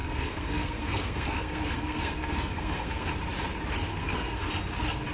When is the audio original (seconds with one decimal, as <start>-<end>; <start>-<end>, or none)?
3.1-3.9; 4.5-5.1